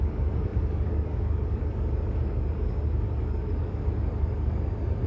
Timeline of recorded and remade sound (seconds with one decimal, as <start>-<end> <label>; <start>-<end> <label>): 0.0-5.1 remade